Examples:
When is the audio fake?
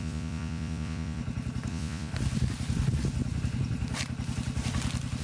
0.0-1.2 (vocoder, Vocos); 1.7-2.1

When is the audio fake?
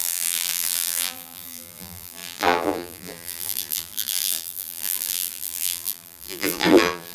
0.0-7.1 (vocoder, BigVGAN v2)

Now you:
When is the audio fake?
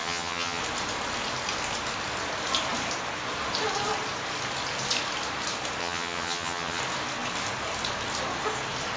0.0-0.6 (vocoder, HiFi-GAN); 5.8-6.8